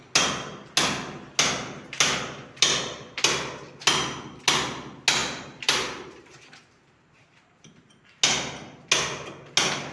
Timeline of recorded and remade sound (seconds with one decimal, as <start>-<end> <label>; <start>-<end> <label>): 0.0-5.2 recorded; 5.2-7.9 remade; 7.9-9.9 recorded